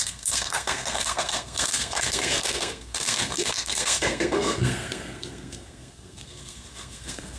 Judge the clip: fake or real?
fake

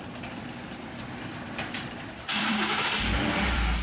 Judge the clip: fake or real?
fake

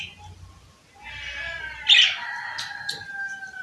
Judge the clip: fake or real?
real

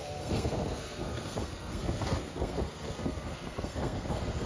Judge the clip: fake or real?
fake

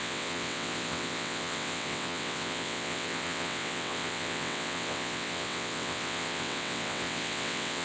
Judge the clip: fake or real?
fake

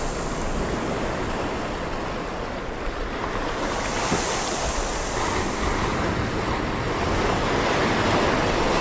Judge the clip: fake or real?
real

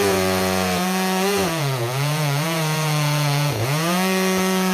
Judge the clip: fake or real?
fake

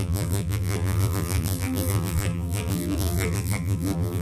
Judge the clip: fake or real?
fake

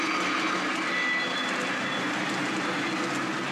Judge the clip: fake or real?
real